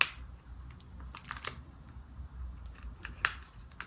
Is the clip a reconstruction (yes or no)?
no